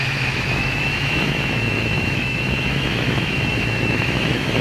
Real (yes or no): no